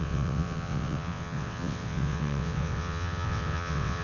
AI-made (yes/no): yes